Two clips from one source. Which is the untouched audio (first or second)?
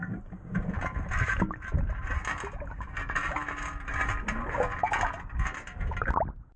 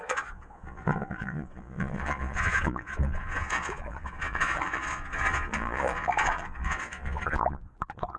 first